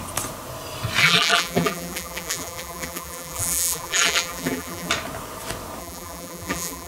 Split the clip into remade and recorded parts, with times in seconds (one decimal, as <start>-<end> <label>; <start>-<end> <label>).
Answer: 0.0-1.0 recorded; 1.0-4.9 remade; 4.9-5.8 recorded; 5.8-6.9 remade